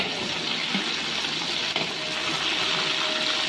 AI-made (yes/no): no